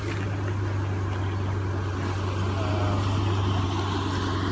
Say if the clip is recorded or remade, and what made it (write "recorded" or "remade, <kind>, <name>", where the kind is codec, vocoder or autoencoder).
recorded